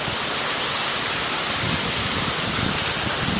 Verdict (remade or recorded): recorded